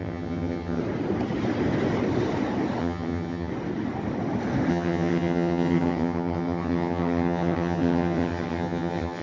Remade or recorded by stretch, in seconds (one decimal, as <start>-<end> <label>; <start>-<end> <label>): 0.0-0.8 remade; 0.8-2.8 recorded; 2.8-3.5 remade; 3.5-4.7 recorded; 4.7-9.2 remade